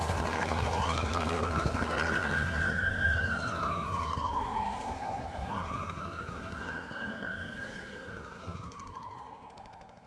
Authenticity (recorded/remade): remade